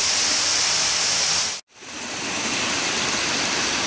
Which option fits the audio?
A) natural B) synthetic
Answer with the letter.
A